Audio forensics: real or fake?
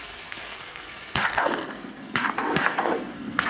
fake